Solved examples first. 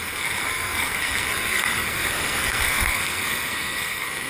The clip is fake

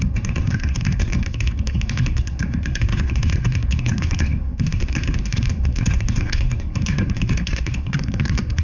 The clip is fake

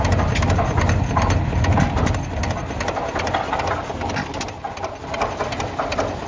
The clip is real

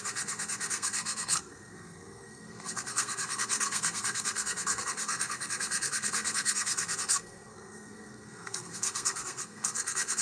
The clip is fake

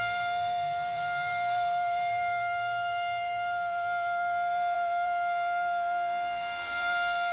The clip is fake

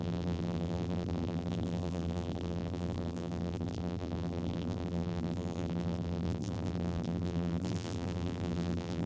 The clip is fake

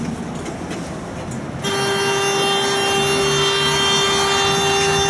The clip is real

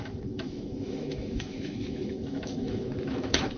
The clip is fake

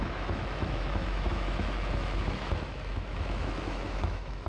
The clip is fake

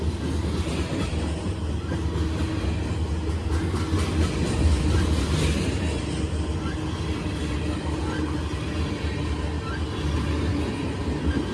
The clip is real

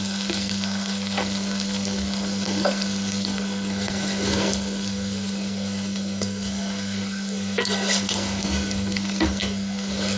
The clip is fake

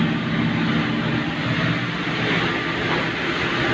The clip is real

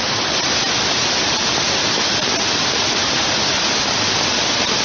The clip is real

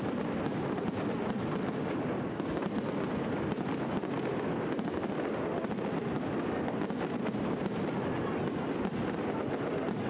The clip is real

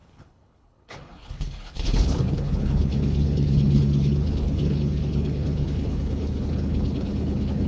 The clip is fake